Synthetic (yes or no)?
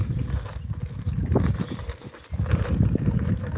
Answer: no